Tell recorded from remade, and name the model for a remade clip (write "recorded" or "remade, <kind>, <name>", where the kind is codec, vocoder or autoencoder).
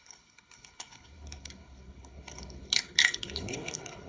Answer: remade, codec, HILCodec